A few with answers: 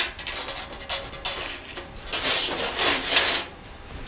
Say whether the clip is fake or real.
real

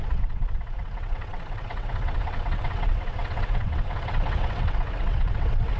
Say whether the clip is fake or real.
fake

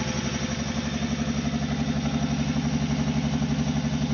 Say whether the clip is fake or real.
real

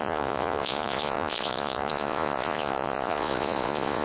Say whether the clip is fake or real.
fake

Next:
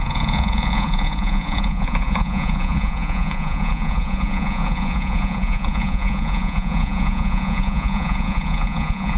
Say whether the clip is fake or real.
fake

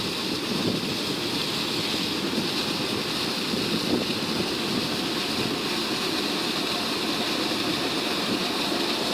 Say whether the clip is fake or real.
real